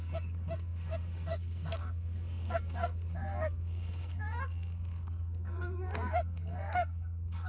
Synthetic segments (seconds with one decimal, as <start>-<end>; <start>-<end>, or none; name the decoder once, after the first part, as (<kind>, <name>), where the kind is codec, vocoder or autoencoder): 0.0-7.5 (codec, SNAC)